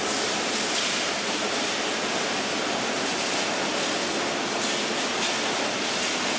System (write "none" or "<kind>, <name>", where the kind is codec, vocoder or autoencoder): none